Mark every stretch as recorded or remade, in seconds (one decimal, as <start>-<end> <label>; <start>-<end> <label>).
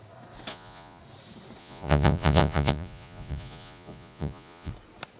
0.0-0.5 recorded; 0.5-1.0 remade; 1.0-1.6 recorded; 1.6-4.7 remade; 4.7-5.2 recorded